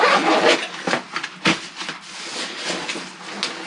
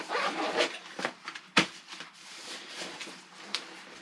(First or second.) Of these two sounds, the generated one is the second